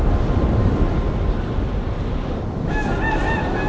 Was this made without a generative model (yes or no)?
yes